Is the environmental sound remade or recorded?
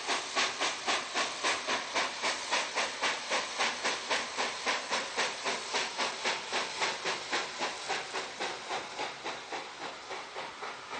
recorded